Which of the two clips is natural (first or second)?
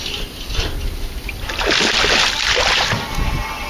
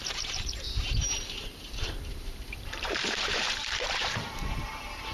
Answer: first